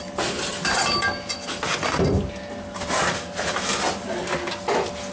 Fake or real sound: real